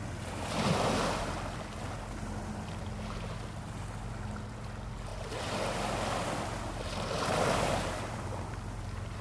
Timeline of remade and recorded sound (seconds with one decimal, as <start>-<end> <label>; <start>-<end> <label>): 0.0-9.2 recorded